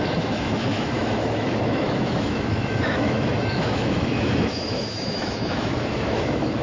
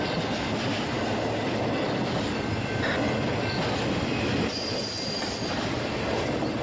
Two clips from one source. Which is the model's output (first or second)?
first